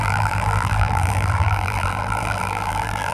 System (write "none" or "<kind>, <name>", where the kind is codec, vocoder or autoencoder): vocoder, BigVGAN v2